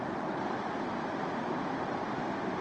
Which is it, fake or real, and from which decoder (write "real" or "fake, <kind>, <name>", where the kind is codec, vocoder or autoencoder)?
real